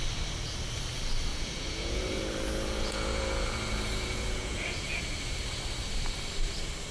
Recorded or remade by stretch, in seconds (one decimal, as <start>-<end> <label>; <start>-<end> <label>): 0.0-1.3 recorded; 1.3-5.0 remade; 5.0-6.9 recorded